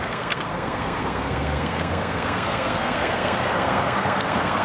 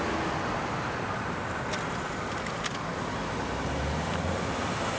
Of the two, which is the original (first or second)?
second